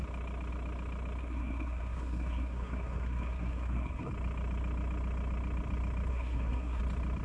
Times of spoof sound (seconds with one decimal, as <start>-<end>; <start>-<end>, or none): 1.2-4.1; 6.1-6.8